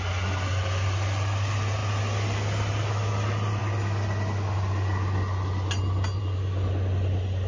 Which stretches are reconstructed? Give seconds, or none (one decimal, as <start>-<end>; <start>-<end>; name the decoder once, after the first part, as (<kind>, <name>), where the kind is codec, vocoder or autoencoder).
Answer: none